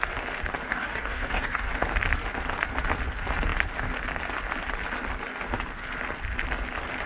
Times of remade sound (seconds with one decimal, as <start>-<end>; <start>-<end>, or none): 0.7-1.7

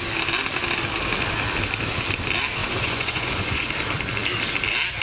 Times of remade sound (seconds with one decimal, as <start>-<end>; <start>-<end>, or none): 2.6-3.7

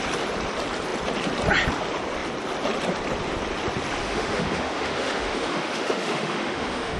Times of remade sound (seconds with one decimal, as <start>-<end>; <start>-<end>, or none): 4.0-7.0

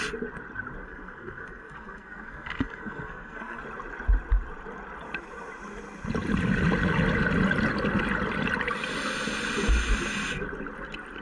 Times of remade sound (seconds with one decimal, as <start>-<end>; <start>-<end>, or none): 0.8-3.6

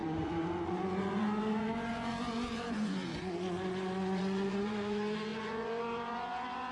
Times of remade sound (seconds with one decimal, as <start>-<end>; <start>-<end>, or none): 0.0-6.7